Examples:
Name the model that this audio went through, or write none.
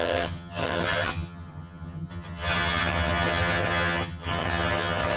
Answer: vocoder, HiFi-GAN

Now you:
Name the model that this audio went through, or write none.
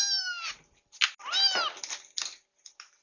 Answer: none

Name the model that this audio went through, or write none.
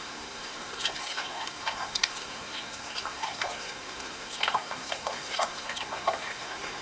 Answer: codec, SNAC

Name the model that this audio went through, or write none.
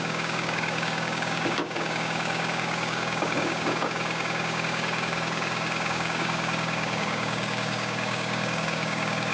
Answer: codec, DAC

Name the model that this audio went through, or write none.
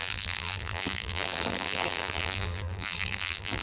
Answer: vocoder, BigVGAN v2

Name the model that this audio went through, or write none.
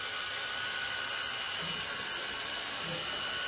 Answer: none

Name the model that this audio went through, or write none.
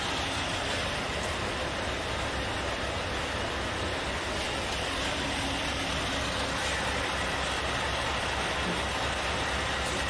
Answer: none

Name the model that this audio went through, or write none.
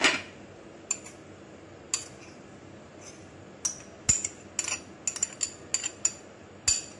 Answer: none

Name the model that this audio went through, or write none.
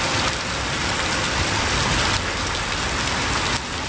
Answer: none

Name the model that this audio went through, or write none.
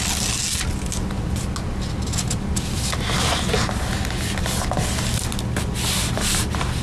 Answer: none